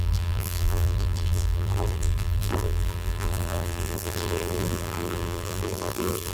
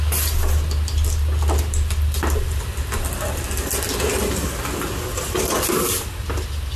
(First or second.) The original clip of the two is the second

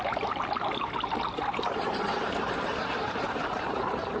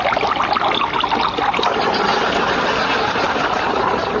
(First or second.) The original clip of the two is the second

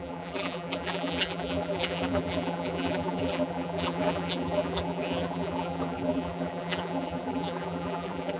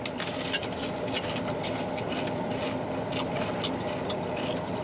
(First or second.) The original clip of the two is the second